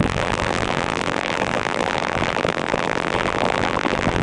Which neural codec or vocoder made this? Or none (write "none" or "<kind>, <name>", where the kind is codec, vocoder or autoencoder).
vocoder, BigVGAN v2